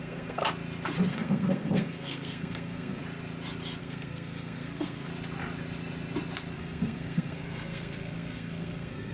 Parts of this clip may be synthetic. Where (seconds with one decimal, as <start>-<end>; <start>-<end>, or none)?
0.0-0.4; 1.1-3.0; 3.8-5.1; 6.5-9.1